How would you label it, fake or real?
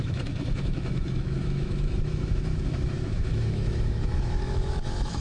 fake